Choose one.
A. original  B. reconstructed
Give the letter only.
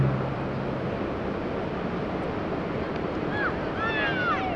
A